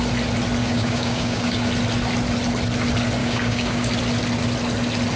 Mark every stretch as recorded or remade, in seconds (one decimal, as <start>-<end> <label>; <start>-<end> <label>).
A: 0.0-0.6 recorded; 0.6-1.7 remade; 1.7-3.2 recorded; 3.2-3.9 remade; 3.9-5.2 recorded